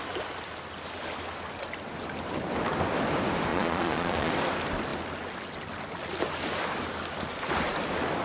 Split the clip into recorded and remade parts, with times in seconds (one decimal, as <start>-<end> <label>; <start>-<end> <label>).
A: 0.0-3.5 recorded; 3.5-4.3 remade; 4.3-8.2 recorded